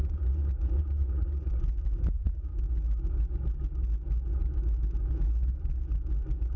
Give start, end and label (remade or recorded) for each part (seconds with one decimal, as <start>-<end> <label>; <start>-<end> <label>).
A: 0.0-1.5 remade; 1.5-2.1 recorded; 2.1-2.5 remade; 2.5-6.6 recorded